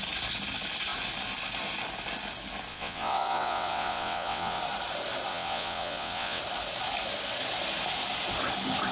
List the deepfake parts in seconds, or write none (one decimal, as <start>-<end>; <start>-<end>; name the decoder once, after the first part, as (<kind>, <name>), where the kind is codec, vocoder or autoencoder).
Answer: 2.7-4.6 (vocoder, WaveNeXt); 5.3-6.4